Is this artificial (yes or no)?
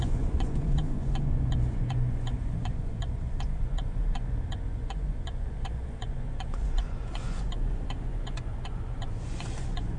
yes